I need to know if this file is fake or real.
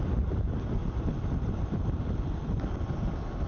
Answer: fake